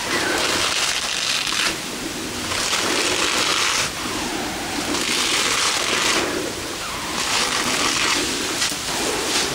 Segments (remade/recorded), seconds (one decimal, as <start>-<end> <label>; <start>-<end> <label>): 0.0-9.5 recorded